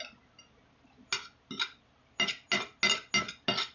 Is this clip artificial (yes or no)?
no